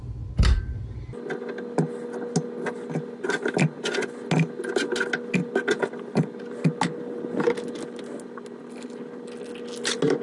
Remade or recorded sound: recorded